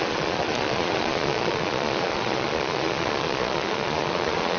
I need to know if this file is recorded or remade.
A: remade